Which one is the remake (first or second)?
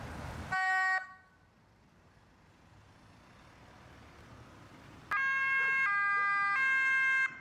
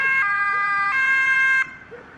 second